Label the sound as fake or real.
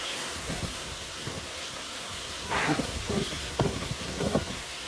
fake